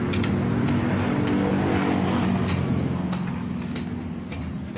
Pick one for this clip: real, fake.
real